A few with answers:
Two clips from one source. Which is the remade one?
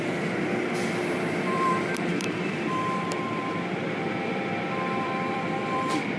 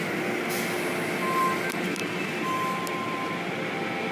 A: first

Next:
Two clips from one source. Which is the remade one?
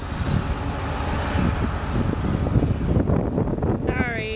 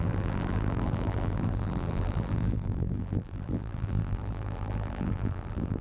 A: second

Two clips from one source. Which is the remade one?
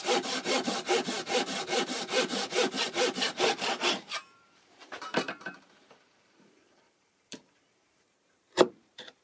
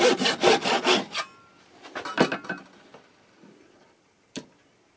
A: first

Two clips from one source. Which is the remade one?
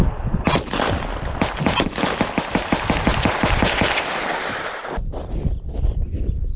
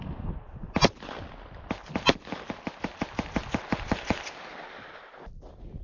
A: first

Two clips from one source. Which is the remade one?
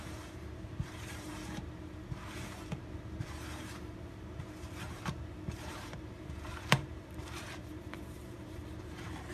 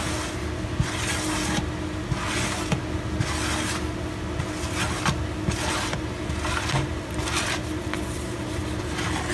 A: first